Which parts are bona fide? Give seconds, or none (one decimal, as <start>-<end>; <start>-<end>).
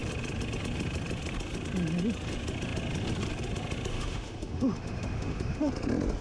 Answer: 0.0-3.9; 5.7-6.2